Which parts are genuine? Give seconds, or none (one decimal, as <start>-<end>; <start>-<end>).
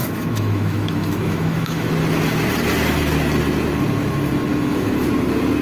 1.9-4.5; 5.1-5.6